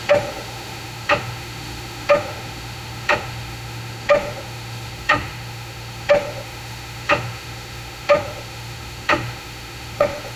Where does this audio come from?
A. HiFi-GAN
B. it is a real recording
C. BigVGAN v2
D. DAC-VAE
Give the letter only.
D